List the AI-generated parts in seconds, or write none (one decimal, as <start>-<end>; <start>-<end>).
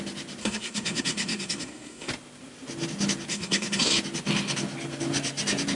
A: 0.4-2.1; 3.3-3.9